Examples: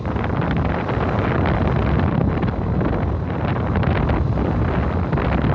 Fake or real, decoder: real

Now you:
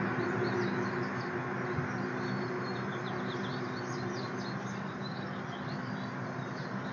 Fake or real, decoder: real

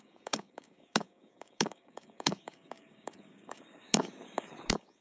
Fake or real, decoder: fake, codec, DAC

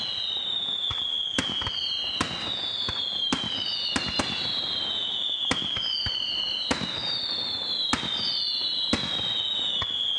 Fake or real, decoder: real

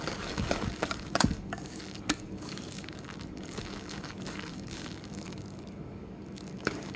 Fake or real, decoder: fake, codec, DAC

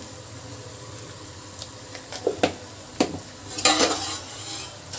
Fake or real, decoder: real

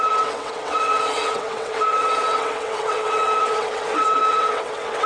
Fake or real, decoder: fake, vocoder, WaveNeXt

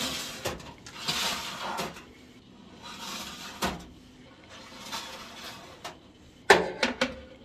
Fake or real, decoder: real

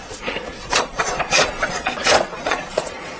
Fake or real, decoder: fake, vocoder, Vocos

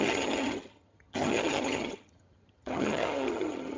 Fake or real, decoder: fake, vocoder, HiFi-GAN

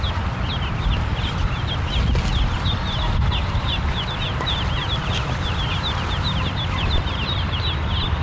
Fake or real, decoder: real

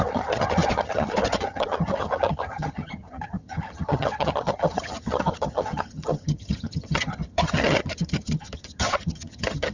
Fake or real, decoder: fake, vocoder, HiFi-GAN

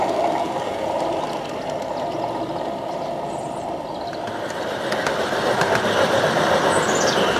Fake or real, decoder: real